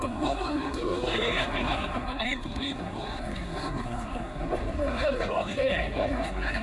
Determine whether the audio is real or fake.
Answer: fake